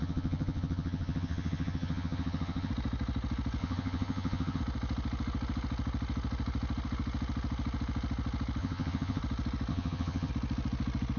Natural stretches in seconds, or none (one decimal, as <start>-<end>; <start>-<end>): 2.7-3.6; 4.6-8.6; 9.2-9.7; 10.3-11.2